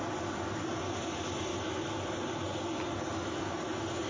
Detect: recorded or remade recorded